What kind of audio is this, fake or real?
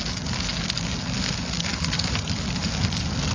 real